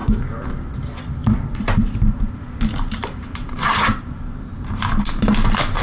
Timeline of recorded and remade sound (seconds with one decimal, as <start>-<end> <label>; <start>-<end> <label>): 0.0-1.2 recorded; 1.2-2.2 remade; 2.2-3.0 recorded; 3.0-4.8 remade; 4.8-5.8 recorded